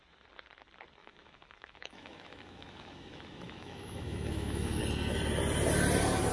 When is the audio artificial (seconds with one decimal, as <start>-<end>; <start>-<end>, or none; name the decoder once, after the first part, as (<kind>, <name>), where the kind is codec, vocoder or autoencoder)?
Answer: 1.0-4.8 (autoencoder, DAC-VAE)